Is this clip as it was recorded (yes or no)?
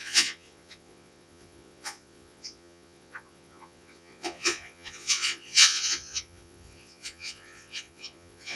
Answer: no